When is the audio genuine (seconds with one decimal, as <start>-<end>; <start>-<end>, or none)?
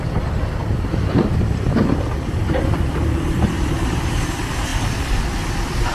none